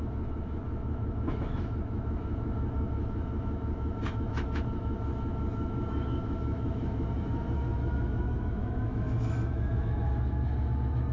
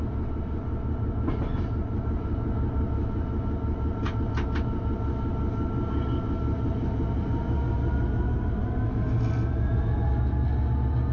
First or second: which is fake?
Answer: first